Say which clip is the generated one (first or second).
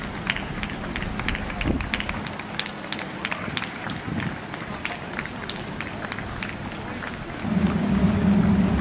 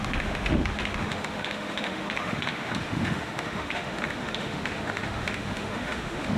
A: second